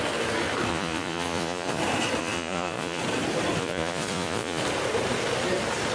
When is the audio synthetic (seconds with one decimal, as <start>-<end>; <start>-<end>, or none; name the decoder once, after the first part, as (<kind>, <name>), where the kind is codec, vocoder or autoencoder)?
0.7-1.8 (vocoder, Vocos); 2.2-3.0; 3.6-4.6